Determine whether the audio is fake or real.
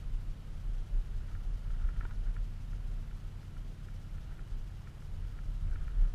real